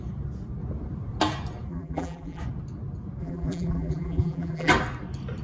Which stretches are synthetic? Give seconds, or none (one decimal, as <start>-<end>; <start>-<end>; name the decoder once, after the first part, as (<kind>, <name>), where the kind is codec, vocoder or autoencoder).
1.7-2.4 (vocoder, BigVGAN v2); 3.2-4.7